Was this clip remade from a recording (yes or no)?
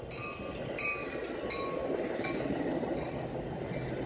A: no